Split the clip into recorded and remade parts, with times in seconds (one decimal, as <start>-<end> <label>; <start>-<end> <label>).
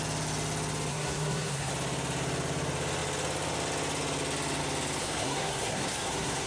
0.0-0.9 recorded; 0.9-1.7 remade; 1.7-5.0 recorded; 5.0-6.5 remade